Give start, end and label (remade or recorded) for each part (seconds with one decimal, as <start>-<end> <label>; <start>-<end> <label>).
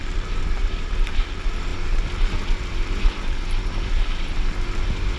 0.0-5.2 remade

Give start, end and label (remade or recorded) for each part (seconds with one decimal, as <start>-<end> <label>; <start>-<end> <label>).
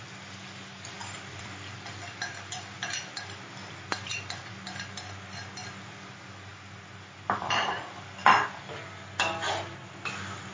0.0-1.0 recorded; 1.0-3.2 remade; 3.2-6.5 recorded; 6.5-9.1 remade; 9.1-10.5 recorded